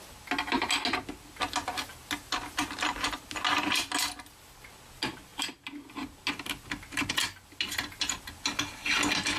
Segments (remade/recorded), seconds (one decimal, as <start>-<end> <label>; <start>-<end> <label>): 0.0-9.4 recorded